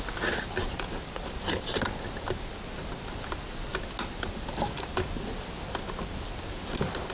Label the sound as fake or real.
real